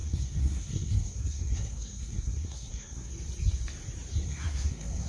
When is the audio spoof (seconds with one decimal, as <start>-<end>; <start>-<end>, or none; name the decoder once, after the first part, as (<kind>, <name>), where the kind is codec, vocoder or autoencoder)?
0.0-3.1 (codec, SNAC); 4.2-5.1